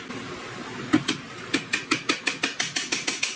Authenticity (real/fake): real